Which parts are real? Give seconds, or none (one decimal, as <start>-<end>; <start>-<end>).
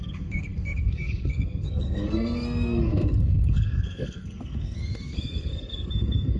none